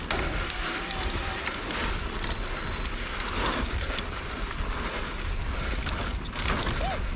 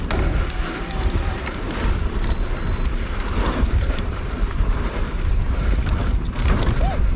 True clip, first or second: first